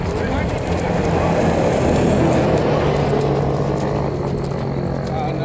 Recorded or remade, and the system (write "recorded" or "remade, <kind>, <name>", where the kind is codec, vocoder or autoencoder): recorded